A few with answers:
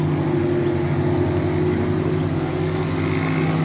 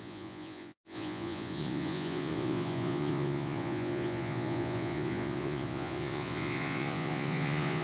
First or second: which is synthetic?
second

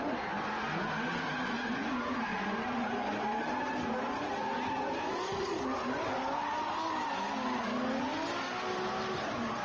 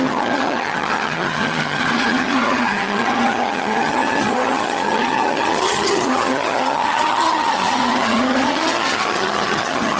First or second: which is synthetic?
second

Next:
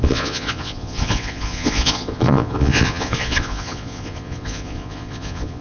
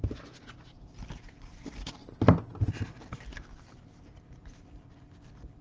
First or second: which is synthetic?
first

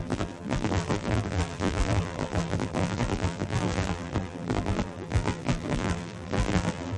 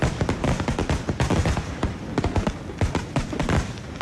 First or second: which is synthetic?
first